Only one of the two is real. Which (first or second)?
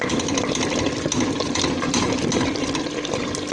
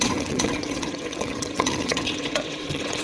first